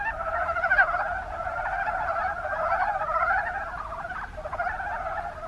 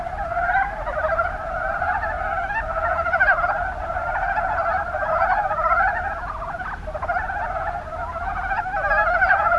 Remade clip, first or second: first